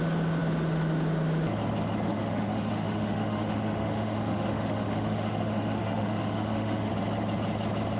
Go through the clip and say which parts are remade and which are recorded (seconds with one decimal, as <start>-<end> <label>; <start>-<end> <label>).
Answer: 0.0-2.1 recorded; 2.1-6.9 remade; 6.9-8.0 recorded